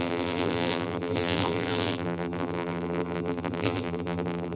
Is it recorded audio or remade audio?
remade